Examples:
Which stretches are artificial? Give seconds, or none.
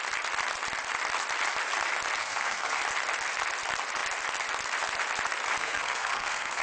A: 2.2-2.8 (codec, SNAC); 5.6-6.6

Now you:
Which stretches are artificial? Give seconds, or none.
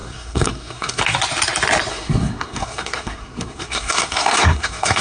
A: 0.0-1.0 (codec, SNAC); 1.9-5.0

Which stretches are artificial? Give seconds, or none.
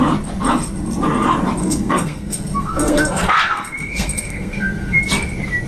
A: 1.6-5.0 (codec, SNAC)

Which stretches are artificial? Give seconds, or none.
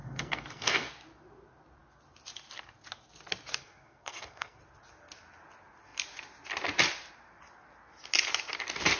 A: 0.0-0.9 (codec, SNAC); 3.5-4.6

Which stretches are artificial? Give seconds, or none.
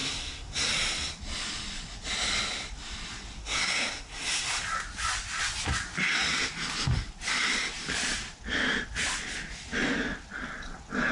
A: 0.0-0.7 (codec, SNAC); 3.4-4.6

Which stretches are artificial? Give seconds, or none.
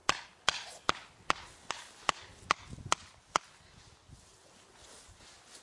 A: none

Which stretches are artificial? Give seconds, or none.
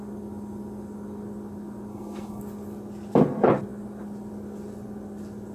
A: 1.9-2.4 (codec, SNAC)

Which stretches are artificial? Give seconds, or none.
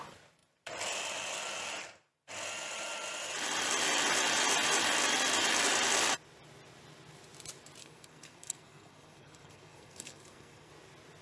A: 7.8-10.7 (codec, SNAC)